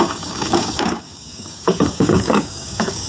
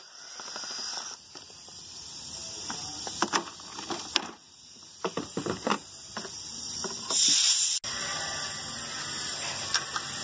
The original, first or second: second